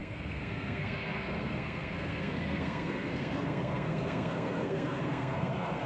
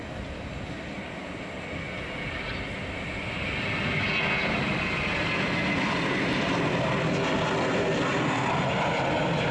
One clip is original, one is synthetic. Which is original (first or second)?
second